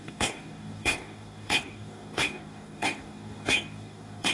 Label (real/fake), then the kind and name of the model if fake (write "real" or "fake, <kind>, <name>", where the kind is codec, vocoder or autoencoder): fake, codec, DAC